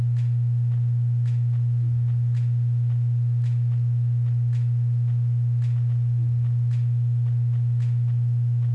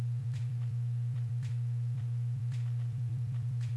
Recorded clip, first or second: first